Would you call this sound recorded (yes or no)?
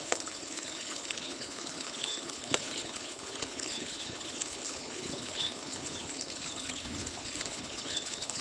no